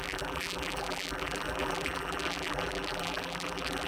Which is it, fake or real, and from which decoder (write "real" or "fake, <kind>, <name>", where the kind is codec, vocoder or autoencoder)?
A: fake, vocoder, BigVGAN v2